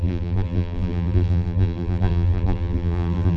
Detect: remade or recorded remade